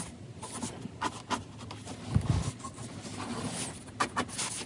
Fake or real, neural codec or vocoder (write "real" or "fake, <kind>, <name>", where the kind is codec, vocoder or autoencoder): real